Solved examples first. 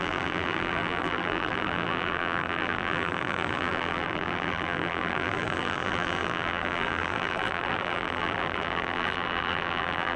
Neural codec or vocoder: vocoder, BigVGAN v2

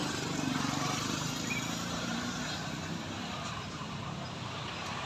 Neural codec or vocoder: vocoder, BigVGAN v2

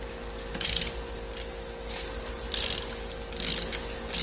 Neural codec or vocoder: none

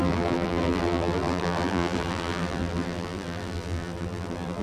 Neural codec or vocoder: vocoder, BigVGAN v2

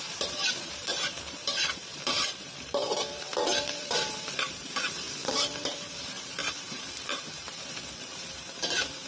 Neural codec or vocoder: vocoder, BigVGAN v2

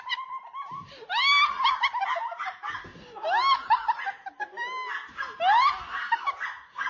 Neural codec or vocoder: none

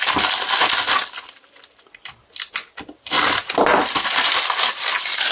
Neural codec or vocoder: vocoder, BigVGAN v2